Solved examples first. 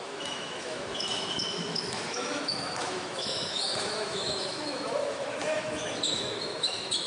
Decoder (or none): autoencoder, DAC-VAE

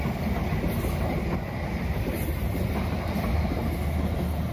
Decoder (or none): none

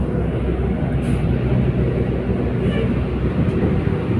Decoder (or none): none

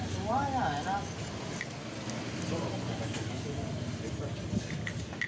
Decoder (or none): none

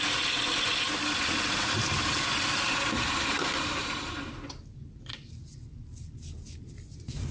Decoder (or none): none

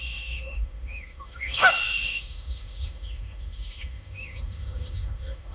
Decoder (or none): autoencoder, DAC-VAE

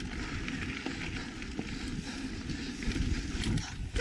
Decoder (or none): none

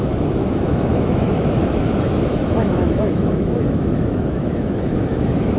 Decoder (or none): autoencoder, DAC-VAE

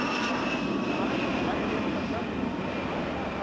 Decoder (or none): none